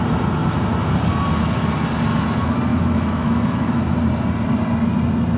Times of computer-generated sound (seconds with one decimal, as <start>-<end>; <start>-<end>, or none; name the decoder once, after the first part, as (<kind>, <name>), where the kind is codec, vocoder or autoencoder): 2.7-3.8 (autoencoder, DAC-VAE)